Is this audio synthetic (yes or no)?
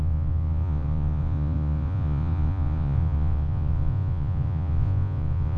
yes